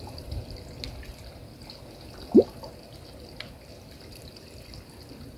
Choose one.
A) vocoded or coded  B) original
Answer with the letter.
B